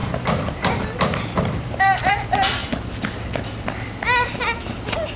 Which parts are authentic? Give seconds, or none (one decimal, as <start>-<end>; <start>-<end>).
0.0-5.2